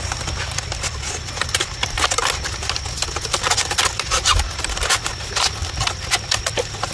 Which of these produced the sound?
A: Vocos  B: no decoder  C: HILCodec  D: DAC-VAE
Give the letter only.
B